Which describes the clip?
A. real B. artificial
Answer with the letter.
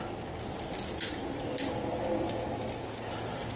A